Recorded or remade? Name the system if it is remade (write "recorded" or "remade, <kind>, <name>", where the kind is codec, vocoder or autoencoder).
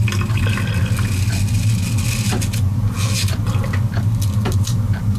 recorded